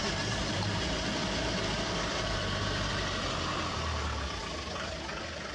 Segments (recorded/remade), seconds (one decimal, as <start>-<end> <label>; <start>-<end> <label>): 0.0-2.9 remade; 2.9-3.7 recorded; 3.7-4.4 remade; 4.4-5.5 recorded